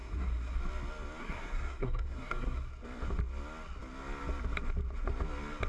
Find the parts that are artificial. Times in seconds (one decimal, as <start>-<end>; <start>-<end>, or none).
0.0-0.6; 1.2-2.7